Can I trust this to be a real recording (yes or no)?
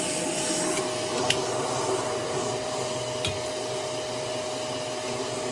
yes